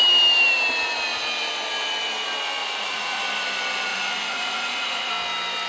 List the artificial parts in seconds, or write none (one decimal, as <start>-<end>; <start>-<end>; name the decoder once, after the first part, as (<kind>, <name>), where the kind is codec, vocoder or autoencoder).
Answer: 2.6-3.2 (vocoder, Vocos); 3.9-5.1